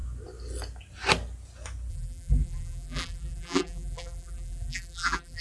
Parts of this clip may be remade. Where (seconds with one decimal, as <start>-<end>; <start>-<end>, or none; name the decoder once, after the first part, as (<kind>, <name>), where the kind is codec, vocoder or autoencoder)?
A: 1.9-5.4 (vocoder, BigVGAN v2)